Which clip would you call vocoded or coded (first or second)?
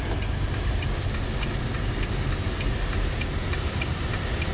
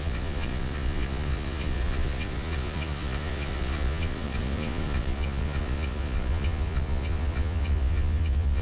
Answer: second